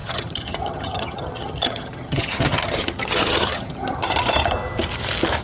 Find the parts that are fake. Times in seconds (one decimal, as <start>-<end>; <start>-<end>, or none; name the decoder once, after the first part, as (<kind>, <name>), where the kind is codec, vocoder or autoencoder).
0.0-4.0 (vocoder, HiFi-GAN)